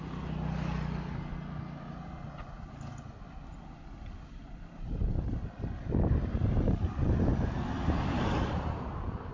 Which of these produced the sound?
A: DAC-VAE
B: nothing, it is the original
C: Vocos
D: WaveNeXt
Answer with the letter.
B